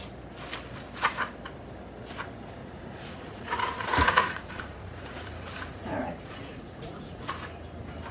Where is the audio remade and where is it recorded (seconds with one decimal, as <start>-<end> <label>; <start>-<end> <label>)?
0.0-2.6 recorded; 2.6-7.2 remade; 7.2-8.1 recorded